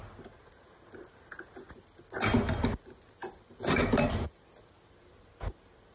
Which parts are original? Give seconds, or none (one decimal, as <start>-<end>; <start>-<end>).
0.0-5.9